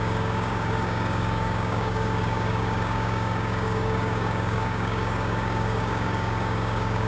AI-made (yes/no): yes